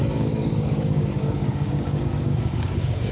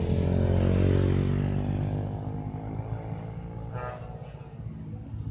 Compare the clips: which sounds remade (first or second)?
first